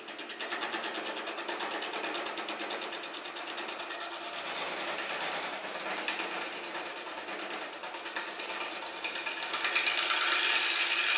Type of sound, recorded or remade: recorded